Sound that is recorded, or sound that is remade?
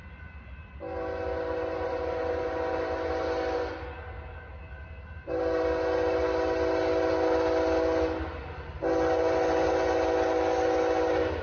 recorded